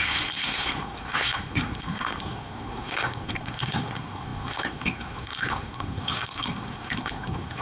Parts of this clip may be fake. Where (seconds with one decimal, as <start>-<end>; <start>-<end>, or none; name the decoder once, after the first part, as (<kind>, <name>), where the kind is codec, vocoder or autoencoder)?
0.0-7.6 (codec, SNAC)